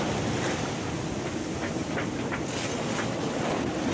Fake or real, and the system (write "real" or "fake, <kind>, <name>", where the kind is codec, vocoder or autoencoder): real